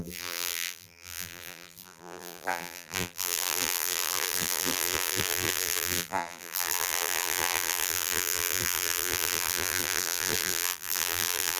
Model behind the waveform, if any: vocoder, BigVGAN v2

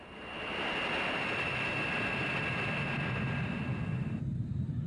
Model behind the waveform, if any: none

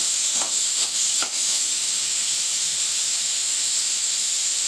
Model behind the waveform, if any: autoencoder, DAC-VAE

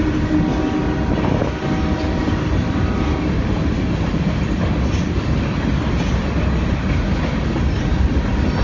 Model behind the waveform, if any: none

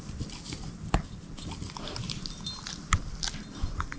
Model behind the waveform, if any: none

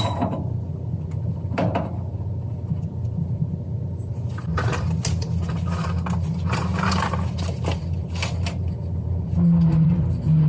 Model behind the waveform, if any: none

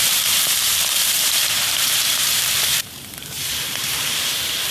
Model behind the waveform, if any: vocoder, BigVGAN v2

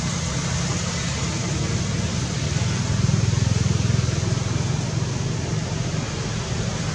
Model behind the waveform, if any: none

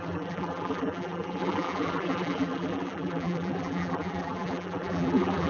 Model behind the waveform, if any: vocoder, BigVGAN v2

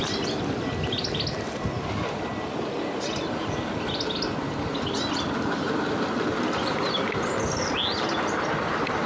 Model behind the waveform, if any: none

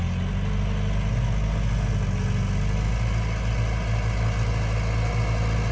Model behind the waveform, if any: none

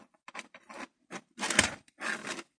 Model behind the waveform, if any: vocoder, BigVGAN v2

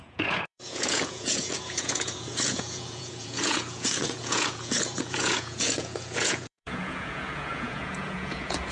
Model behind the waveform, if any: vocoder, Vocos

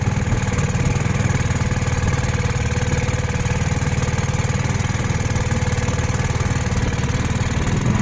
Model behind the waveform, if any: none